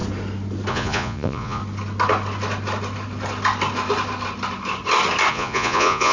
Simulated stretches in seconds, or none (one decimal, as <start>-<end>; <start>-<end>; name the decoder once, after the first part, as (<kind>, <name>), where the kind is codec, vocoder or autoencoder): 0.7-1.6 (vocoder, Vocos); 5.3-6.1